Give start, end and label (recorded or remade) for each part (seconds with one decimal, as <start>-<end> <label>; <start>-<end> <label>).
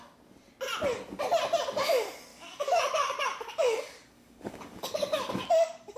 0.0-2.3 recorded; 2.3-6.0 remade